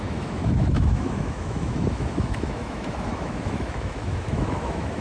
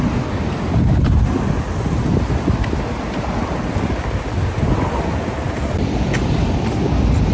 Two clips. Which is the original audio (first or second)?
second